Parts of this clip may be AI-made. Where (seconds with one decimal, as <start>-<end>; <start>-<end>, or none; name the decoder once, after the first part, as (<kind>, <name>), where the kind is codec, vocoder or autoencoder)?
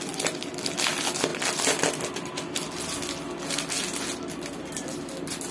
none